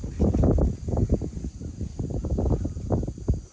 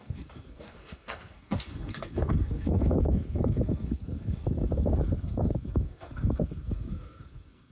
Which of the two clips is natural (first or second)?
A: first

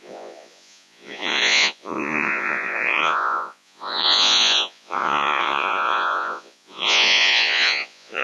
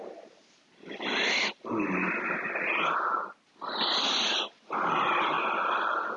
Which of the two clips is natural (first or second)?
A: second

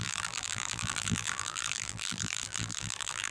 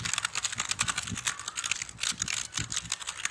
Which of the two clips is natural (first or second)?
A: second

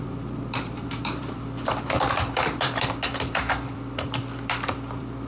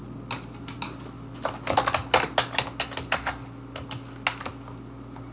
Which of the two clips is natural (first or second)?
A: second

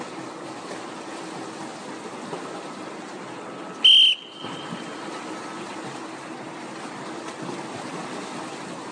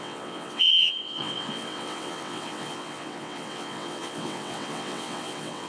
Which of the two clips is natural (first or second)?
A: first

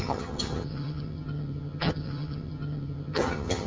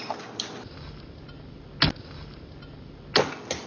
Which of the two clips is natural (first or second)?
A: second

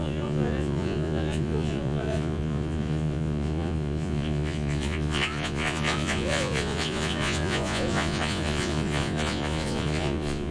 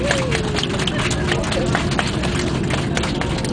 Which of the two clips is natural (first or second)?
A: second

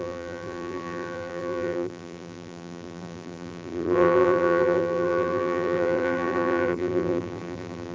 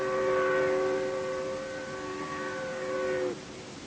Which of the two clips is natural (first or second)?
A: second